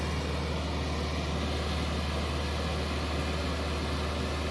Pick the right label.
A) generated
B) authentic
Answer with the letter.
B